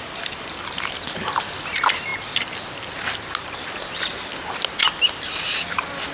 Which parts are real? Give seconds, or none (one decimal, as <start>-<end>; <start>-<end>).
0.0-6.1